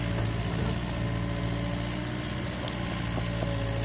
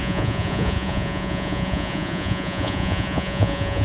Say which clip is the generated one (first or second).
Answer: second